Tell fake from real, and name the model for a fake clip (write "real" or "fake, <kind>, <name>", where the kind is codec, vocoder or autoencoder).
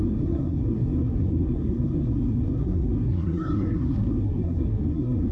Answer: fake, codec, SNAC